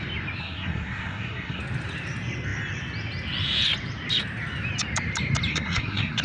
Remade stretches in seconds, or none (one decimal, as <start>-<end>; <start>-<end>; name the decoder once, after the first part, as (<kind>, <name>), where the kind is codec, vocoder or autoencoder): 0.4-1.6 (codec, SNAC); 5.5-6.2